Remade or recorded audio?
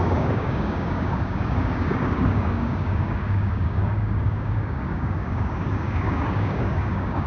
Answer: remade